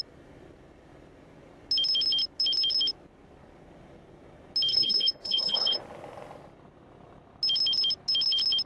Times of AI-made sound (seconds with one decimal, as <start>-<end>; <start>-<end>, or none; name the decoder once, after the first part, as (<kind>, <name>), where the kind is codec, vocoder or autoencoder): 4.7-5.8 (codec, HILCodec)